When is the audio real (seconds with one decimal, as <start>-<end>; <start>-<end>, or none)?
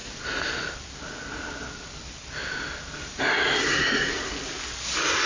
0.0-5.3